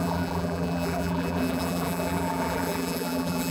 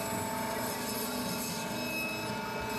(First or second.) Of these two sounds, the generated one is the first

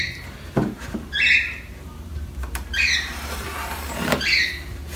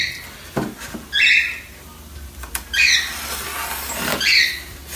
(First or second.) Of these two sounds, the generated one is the first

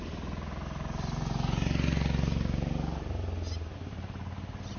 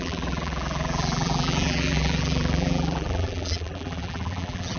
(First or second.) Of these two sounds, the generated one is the second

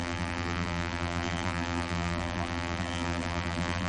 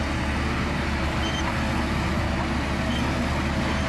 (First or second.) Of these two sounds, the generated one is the first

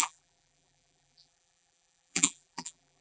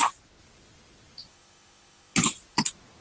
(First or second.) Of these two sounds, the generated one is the first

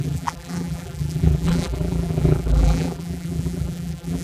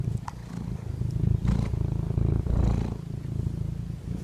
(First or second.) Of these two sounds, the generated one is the first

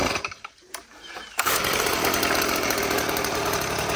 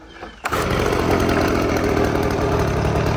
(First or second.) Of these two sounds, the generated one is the first